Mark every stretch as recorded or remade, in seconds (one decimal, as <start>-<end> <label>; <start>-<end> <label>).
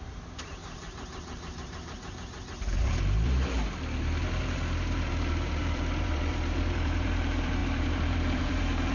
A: 0.0-8.9 remade